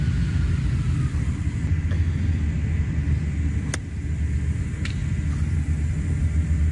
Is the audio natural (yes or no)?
yes